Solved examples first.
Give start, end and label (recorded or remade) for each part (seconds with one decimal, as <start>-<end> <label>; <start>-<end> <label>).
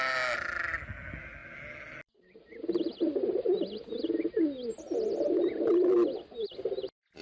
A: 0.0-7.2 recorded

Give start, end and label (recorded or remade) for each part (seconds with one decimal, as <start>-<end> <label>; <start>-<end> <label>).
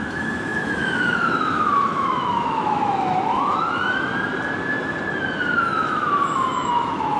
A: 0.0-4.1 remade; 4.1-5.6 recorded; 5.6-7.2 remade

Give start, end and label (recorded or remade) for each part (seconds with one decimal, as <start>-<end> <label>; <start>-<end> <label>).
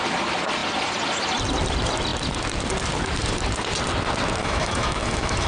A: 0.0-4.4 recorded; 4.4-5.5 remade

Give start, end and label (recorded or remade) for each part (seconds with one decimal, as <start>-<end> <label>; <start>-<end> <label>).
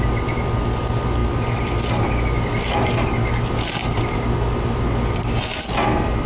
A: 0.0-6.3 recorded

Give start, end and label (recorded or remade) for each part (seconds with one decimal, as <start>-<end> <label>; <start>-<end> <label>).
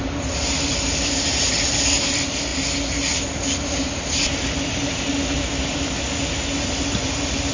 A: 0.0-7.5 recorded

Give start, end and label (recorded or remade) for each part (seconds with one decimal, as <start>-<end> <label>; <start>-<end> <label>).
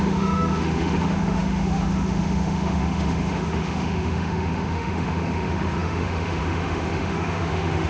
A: 0.0-7.9 remade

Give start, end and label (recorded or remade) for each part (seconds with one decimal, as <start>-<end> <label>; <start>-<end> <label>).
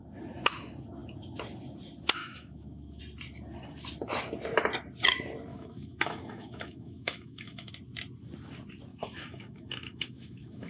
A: 0.0-2.2 recorded; 2.2-3.0 remade; 3.0-5.5 recorded; 5.5-7.7 remade; 7.7-8.9 recorded; 8.9-10.7 remade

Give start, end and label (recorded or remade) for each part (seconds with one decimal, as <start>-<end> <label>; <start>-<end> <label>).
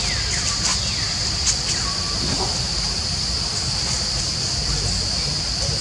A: 0.0-5.8 recorded